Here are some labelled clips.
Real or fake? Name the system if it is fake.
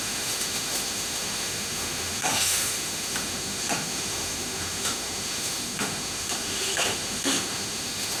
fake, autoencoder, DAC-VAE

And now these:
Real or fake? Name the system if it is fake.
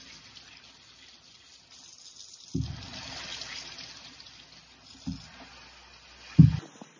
real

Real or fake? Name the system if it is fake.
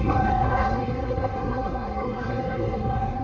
fake, codec, SNAC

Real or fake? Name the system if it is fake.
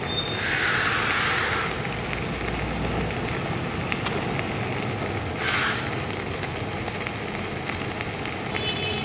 real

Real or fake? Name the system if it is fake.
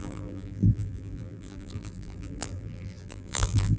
fake, vocoder, BigVGAN v2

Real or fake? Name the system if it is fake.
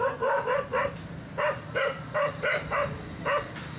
real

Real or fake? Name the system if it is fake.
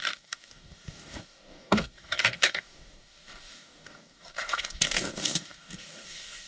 fake, codec, DAC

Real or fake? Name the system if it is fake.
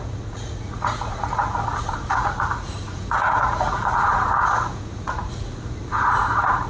fake, vocoder, Vocos